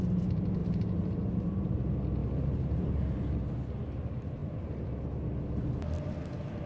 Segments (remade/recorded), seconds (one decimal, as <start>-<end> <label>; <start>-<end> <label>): 0.0-0.6 recorded; 0.6-1.7 remade; 1.7-2.2 recorded; 2.2-3.3 remade; 3.3-6.7 recorded